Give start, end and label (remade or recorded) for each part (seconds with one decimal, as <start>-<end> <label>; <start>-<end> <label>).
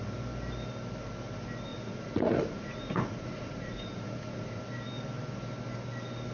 0.0-1.7 recorded; 1.7-4.6 remade; 4.6-6.3 recorded